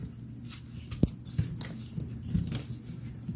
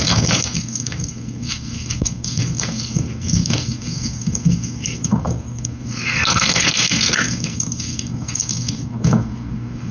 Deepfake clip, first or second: second